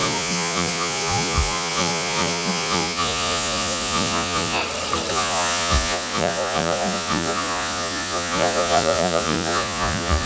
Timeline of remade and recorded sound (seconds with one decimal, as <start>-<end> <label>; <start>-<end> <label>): 0.0-4.6 remade; 4.6-5.1 recorded; 5.1-10.3 remade